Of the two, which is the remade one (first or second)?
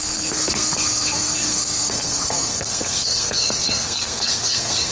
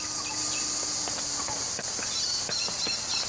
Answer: first